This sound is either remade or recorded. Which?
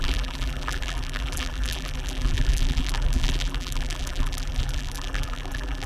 remade